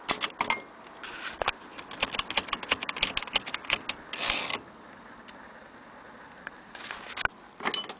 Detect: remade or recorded recorded